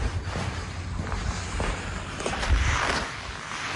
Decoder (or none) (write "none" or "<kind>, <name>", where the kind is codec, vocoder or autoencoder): none